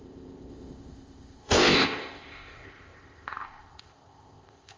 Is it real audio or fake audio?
fake